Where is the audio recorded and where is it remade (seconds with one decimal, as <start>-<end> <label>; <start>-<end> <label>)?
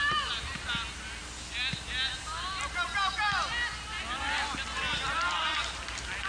0.0-6.3 recorded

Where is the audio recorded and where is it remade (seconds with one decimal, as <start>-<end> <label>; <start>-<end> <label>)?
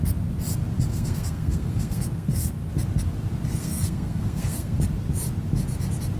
0.0-0.9 recorded; 0.9-2.6 remade; 2.6-3.6 recorded; 3.6-4.8 remade; 4.8-6.2 recorded